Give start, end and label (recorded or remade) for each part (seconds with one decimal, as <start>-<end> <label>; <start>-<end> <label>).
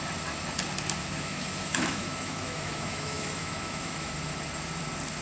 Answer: 0.0-1.0 recorded; 1.0-4.1 remade; 4.1-5.2 recorded